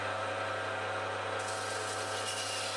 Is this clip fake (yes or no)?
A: no